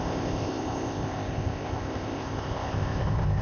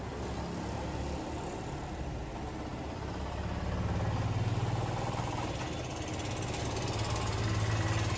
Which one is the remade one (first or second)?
first